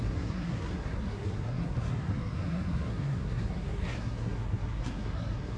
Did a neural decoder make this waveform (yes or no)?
yes